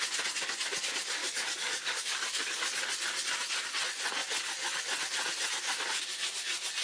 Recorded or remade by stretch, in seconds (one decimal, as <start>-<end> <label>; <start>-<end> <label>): 0.0-1.2 recorded; 1.2-2.6 remade; 2.6-6.8 recorded

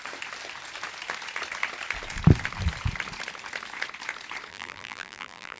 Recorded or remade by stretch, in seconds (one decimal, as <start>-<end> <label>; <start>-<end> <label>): 0.0-4.5 recorded; 4.5-5.6 remade

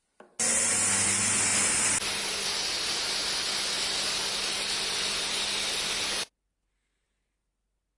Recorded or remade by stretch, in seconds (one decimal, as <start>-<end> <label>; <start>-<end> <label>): 0.0-8.0 recorded

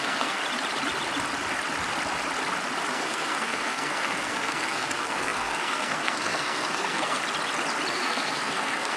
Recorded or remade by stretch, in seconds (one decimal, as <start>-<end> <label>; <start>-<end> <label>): 0.0-0.4 remade; 0.4-2.9 recorded; 2.9-7.2 remade; 7.2-7.9 recorded; 7.9-9.0 remade